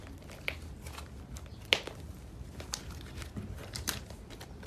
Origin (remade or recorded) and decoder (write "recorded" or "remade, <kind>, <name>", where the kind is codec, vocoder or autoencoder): recorded